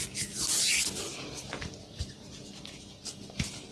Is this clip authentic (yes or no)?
yes